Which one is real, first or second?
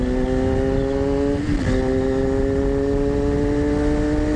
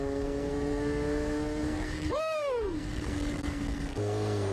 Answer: first